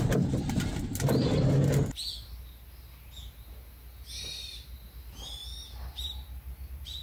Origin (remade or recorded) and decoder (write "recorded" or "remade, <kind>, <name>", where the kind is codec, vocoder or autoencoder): recorded